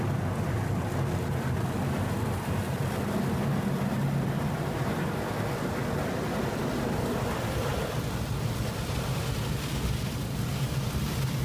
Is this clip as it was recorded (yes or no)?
yes